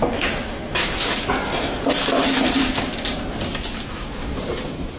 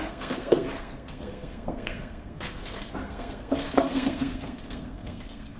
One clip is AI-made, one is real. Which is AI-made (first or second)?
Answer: second